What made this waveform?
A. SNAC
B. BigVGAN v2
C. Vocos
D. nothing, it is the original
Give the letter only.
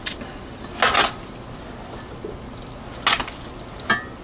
D